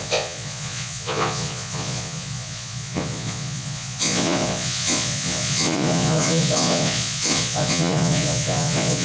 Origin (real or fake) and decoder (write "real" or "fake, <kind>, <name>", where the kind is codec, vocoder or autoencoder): fake, vocoder, Vocos